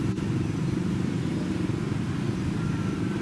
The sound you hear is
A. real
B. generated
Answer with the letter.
A